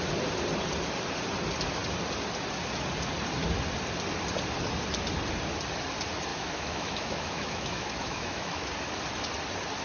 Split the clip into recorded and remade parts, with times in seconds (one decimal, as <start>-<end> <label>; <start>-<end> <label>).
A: 0.0-6.3 recorded; 6.3-8.7 remade; 8.7-9.8 recorded